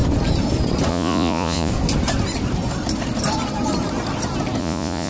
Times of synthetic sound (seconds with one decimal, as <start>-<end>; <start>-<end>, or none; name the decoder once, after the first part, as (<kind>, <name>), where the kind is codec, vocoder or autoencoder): 0.9-1.7 (vocoder, Vocos); 4.6-5.1